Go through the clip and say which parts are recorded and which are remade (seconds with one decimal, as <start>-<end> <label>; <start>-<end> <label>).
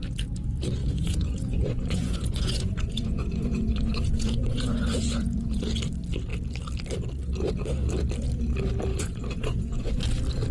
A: 0.0-0.8 recorded; 0.8-5.6 remade; 5.6-8.9 recorded; 8.9-10.0 remade; 10.0-10.5 recorded